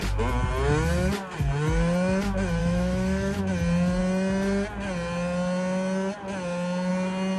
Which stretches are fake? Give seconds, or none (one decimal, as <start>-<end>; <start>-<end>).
2.6-3.4